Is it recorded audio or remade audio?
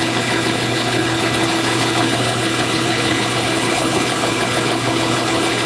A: remade